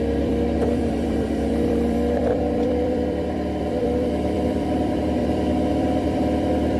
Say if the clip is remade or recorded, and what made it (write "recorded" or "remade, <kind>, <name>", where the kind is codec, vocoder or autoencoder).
remade, vocoder, BigVGAN v2